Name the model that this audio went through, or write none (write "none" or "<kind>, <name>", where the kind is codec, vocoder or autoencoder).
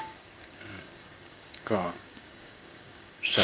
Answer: codec, DAC